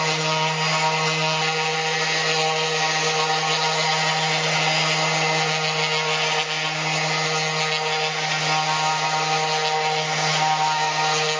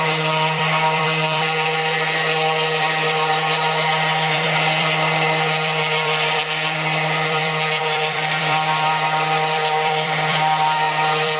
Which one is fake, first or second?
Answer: second